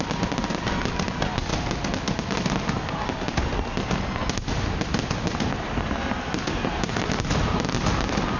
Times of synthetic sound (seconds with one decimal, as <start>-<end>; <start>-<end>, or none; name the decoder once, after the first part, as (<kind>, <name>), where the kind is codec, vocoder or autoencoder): none